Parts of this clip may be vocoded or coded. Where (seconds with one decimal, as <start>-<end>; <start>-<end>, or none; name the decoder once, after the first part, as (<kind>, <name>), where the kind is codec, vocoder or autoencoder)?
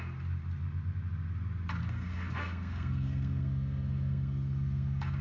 1.8-5.2 (codec, SNAC)